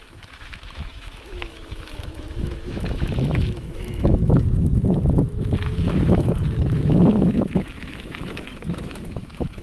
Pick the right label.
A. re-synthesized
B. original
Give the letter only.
A